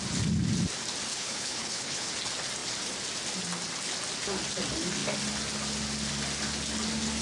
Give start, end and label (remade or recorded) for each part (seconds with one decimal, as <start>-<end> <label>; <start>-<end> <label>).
0.0-1.1 recorded; 1.1-2.1 remade; 2.1-7.2 recorded